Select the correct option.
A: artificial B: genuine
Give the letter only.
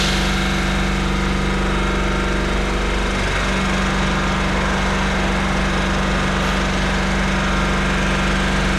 B